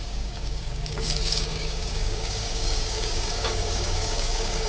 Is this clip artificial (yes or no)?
yes